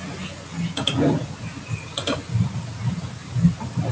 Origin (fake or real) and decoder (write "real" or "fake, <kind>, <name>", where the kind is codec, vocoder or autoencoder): real